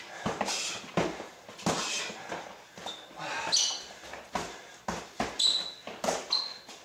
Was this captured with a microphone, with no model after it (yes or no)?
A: yes